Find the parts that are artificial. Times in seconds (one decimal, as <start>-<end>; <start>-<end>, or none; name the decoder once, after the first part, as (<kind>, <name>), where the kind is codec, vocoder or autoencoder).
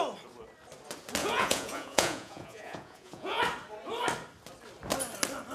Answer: 1.2-3.4 (vocoder, Vocos)